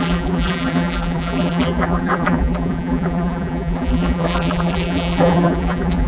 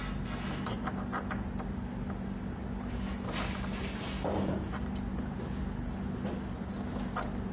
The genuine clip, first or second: second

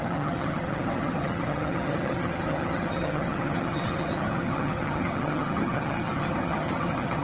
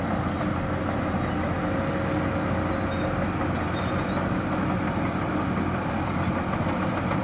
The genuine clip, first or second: second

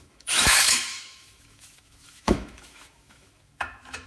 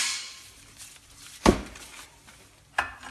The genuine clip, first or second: second